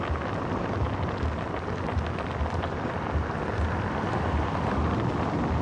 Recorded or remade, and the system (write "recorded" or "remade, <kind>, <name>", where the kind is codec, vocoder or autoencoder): recorded